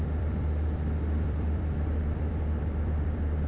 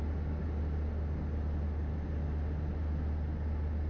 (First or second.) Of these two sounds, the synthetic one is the first